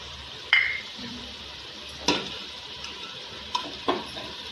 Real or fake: fake